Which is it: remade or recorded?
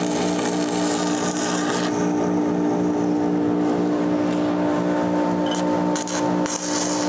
recorded